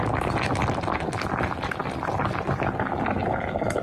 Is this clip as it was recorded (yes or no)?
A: yes